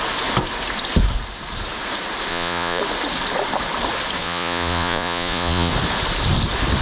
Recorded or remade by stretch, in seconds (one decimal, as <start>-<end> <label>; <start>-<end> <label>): 0.0-2.3 recorded; 2.3-2.8 remade; 2.8-4.2 recorded; 4.2-5.7 remade; 5.7-6.8 recorded